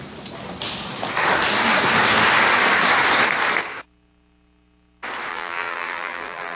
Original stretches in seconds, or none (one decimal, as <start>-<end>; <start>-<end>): 0.0-5.3